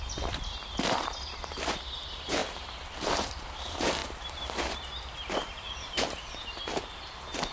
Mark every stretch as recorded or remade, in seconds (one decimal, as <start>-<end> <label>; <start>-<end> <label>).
0.0-7.5 remade